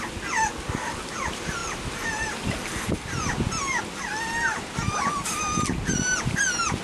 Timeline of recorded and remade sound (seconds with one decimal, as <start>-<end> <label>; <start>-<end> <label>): 0.0-6.8 recorded